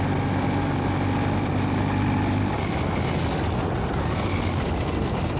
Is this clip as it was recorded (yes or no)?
yes